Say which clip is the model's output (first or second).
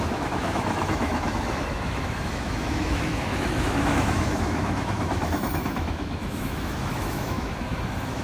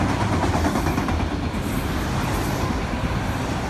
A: first